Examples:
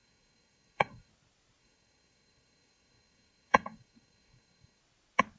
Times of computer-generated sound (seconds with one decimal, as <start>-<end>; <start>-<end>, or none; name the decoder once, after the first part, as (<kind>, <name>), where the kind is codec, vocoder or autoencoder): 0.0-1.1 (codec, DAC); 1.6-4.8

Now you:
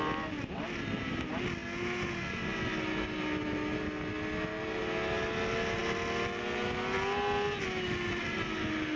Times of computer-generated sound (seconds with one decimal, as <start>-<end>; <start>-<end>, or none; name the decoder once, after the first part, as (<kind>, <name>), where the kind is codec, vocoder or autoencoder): none

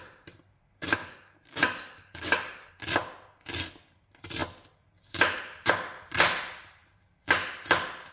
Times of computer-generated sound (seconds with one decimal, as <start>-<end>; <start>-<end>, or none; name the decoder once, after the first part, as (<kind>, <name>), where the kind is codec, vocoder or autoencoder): 1.0-2.7 (codec, DAC)

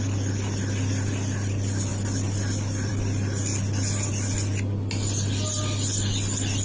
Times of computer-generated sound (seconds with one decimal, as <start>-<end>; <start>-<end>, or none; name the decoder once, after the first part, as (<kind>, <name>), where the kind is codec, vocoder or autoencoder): none

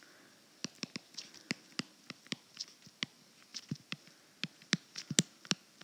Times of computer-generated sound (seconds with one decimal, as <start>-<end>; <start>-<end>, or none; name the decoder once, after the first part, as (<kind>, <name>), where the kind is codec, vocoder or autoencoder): none

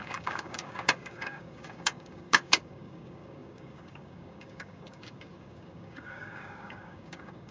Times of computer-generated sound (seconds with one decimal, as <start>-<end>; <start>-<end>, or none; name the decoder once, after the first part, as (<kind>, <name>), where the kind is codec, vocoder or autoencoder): 0.0-7.5 (codec, DAC)

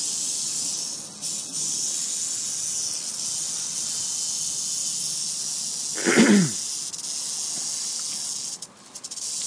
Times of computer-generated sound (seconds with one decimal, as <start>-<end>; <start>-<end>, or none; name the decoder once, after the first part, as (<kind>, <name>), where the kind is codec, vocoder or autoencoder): none

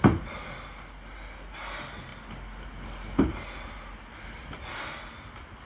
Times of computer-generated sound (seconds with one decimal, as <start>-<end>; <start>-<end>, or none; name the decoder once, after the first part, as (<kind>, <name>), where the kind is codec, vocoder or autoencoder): none